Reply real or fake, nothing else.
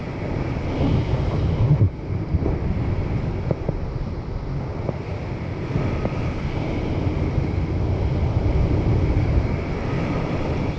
real